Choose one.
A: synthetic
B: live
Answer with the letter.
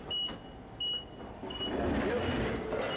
B